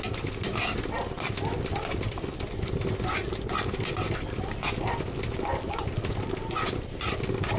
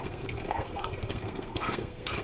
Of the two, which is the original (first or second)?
first